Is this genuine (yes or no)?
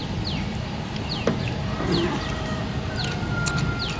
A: yes